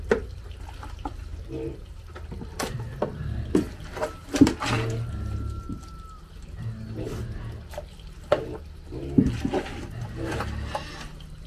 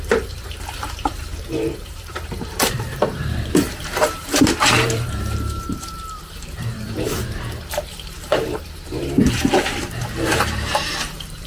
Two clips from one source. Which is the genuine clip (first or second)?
first